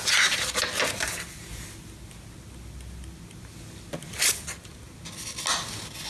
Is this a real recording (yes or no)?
yes